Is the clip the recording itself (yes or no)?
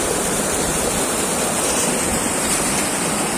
no